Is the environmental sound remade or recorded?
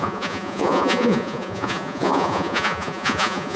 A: remade